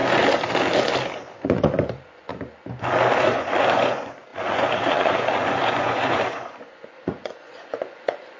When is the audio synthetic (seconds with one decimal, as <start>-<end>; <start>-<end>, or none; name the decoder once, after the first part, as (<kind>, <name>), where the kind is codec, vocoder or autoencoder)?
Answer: 1.1-2.3 (vocoder, Vocos); 3.2-8.4